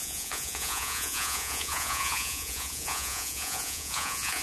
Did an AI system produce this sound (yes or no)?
yes